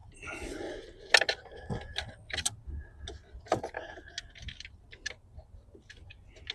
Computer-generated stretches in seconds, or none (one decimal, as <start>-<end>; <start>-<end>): none